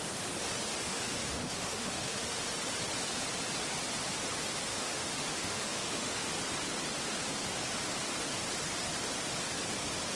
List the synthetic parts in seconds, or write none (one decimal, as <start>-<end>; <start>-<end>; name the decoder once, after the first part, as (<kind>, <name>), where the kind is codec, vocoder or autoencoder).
0.7-2.4 (autoencoder, DAC-VAE); 4.7-6.3